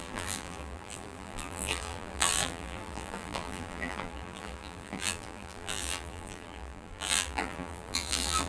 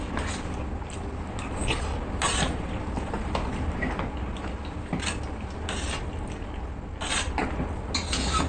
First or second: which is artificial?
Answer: first